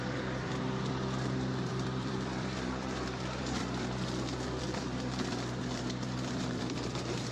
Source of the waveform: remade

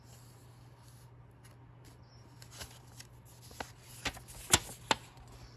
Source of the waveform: recorded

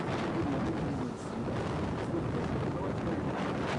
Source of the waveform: recorded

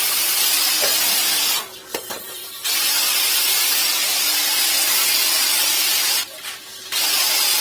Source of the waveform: recorded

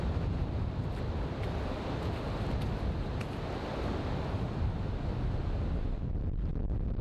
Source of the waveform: recorded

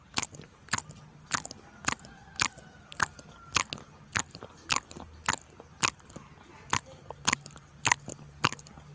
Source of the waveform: recorded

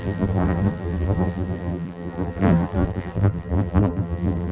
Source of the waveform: remade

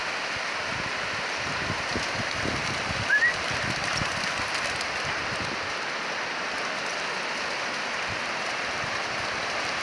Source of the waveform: remade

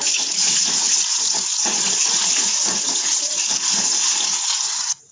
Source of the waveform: remade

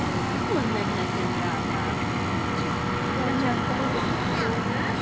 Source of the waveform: recorded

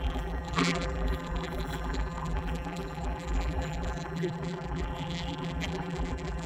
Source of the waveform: remade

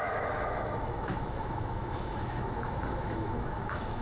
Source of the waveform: remade